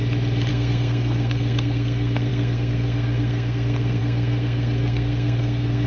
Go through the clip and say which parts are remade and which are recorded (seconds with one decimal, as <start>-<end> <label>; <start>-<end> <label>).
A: 0.0-0.5 recorded; 0.5-5.9 remade